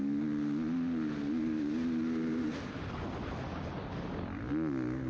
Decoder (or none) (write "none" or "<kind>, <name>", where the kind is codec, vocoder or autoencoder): none